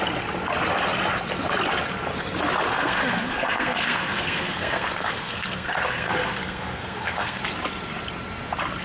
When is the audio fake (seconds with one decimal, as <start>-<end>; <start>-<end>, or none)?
2.7-7.4